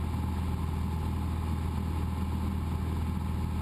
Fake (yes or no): no